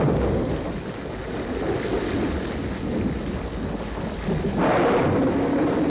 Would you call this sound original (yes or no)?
yes